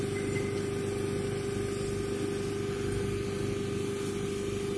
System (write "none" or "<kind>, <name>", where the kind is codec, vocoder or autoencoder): none